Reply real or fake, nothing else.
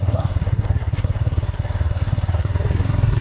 fake